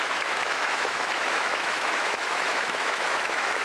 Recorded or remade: remade